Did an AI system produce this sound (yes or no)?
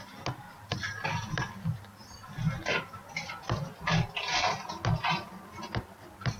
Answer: no